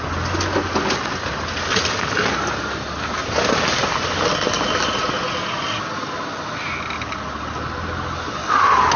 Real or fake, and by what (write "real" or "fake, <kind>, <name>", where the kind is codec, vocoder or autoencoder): real